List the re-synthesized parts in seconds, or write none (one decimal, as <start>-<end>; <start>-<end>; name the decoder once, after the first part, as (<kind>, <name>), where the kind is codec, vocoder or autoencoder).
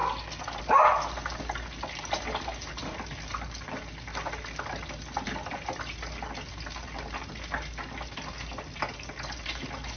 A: none